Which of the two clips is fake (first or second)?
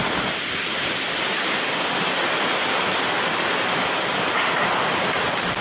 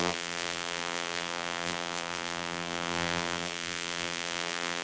second